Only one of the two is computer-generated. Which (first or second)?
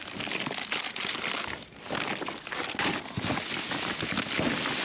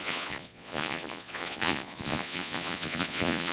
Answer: second